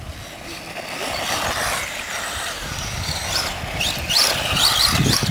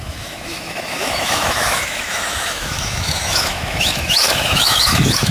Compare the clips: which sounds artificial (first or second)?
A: second